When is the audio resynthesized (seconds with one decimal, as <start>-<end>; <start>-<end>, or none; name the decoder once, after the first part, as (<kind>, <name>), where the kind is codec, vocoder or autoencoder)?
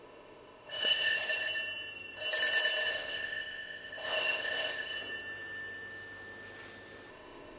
0.0-1.2 (codec, ZipCodec); 2.9-4.9; 7.1-7.6